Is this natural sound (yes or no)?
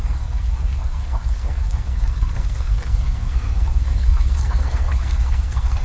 no